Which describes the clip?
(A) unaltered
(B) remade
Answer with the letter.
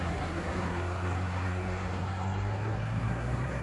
B